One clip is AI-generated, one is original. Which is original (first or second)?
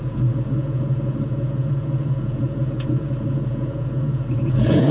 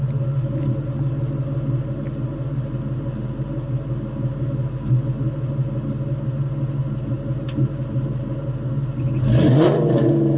second